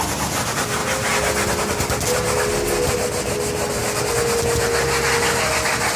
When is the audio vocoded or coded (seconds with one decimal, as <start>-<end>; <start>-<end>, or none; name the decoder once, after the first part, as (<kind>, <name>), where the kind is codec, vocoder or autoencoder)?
none